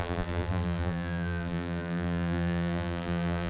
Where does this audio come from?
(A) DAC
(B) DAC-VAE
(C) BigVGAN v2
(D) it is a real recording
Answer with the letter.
C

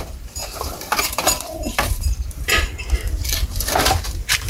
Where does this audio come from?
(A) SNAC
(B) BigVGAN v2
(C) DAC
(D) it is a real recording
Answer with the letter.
B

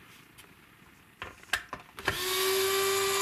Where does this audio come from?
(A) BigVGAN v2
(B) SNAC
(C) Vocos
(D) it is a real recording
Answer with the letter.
D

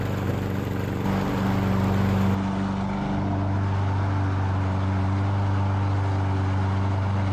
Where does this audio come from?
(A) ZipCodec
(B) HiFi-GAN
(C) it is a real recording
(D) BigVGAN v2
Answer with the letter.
C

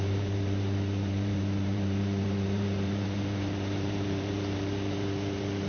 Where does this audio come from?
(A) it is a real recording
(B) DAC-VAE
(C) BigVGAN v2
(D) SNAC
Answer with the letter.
C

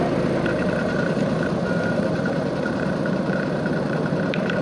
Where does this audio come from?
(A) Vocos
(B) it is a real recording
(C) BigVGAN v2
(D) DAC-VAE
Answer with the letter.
C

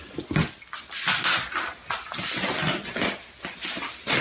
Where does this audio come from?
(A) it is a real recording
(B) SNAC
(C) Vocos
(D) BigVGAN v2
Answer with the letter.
A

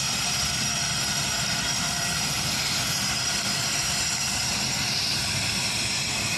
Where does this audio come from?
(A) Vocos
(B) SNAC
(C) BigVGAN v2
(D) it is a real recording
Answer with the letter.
C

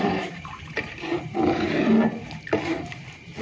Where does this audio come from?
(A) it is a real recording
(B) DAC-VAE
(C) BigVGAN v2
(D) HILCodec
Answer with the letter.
C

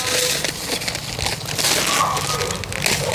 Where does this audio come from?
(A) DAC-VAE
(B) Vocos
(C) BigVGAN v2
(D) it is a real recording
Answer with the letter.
D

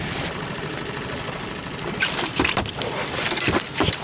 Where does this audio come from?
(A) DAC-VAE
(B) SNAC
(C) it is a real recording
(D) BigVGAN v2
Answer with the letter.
D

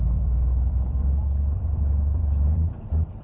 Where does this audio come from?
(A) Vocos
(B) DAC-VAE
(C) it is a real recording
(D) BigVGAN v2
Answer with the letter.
D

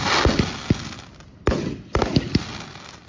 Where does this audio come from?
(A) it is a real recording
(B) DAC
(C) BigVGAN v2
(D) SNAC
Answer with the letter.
A